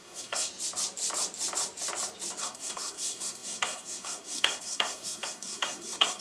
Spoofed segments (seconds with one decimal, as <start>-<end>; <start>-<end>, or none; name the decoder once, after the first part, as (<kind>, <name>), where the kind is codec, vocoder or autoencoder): 0.0-0.5 (codec, SNAC); 2.4-6.2